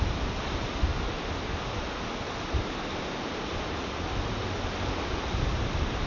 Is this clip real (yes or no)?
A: yes